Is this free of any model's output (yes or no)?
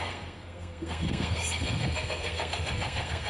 no